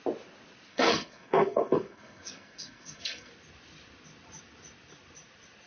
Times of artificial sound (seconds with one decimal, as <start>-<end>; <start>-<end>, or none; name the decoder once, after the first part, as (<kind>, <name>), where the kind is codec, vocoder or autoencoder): 0.7-3.3 (codec, SNAC)